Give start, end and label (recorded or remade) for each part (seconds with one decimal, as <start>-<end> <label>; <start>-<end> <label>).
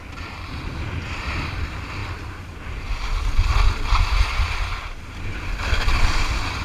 0.0-6.6 recorded